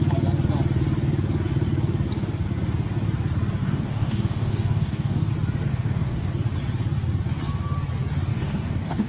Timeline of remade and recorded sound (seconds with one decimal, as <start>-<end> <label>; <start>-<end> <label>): 0.0-3.6 recorded; 3.6-5.3 remade; 5.3-5.7 recorded; 5.7-6.3 remade; 6.3-8.3 recorded; 8.3-9.1 remade